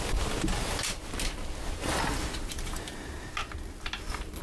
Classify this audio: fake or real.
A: real